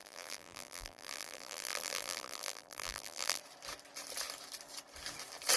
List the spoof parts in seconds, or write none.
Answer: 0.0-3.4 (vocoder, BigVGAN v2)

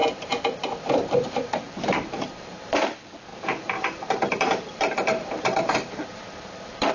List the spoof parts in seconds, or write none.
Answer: 0.0-6.9 (vocoder, BigVGAN v2)

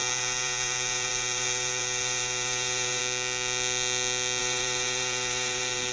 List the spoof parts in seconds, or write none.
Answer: 0.0-3.0 (vocoder, BigVGAN v2); 4.4-5.9

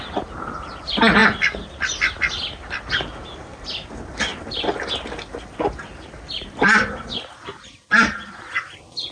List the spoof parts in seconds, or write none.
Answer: none

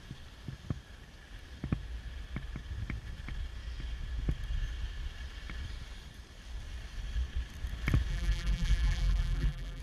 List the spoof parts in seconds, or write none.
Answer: 8.1-9.8 (vocoder, BigVGAN v2)

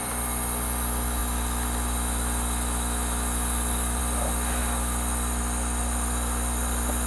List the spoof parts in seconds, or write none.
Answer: none

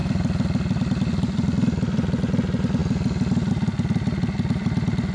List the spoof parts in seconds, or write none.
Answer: none

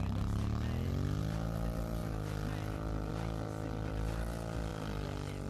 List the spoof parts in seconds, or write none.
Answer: none